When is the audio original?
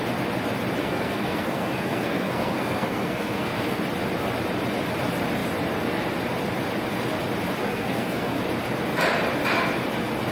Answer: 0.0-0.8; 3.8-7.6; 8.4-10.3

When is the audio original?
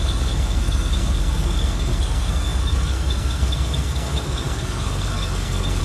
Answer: none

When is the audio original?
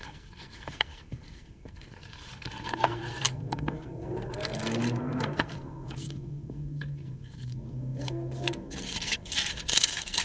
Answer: none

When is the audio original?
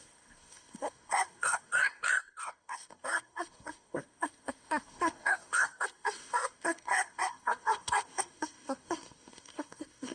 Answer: none